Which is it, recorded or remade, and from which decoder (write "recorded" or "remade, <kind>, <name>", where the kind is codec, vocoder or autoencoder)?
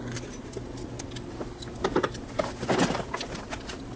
recorded